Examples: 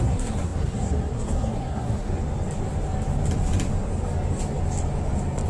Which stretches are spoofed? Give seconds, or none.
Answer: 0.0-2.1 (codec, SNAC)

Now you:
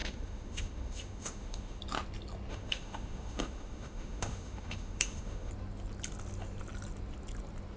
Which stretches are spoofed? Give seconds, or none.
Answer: 0.0-1.8 (autoencoder, DAC-VAE); 2.5-5.5